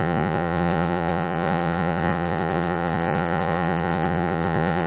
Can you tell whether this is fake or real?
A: fake